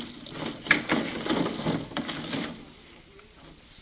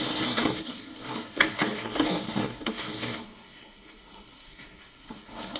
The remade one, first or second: second